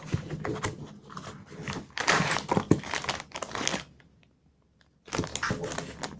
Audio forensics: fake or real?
real